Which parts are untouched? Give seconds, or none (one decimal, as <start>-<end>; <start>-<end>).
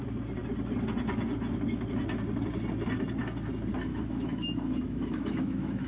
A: 0.0-3.9